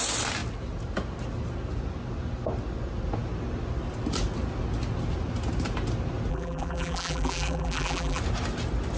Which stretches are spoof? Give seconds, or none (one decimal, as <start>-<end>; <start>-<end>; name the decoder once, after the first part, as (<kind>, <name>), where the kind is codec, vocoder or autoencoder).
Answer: 6.3-8.2 (vocoder, BigVGAN v2)